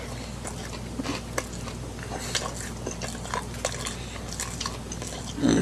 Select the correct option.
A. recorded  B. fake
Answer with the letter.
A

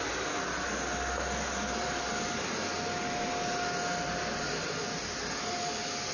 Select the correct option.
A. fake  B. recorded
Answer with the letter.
B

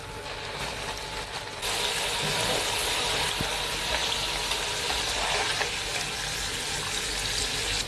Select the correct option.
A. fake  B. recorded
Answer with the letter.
B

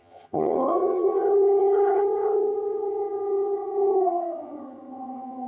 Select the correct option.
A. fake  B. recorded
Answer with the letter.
A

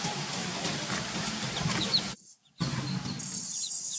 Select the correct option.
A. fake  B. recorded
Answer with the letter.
B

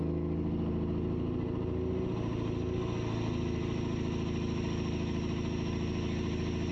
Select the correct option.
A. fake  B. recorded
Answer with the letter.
B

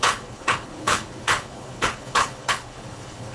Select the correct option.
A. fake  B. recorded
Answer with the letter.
A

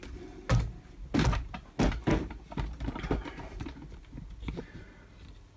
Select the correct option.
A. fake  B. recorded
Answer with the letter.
B